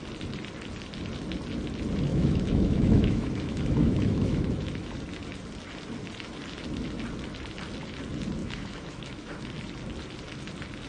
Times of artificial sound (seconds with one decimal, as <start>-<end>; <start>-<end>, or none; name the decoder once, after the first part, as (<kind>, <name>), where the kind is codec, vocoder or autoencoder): 2.1-4.9 (autoencoder, DAC-VAE); 8.4-9.5